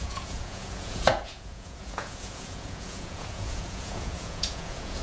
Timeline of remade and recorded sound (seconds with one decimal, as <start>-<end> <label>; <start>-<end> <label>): 0.0-5.0 remade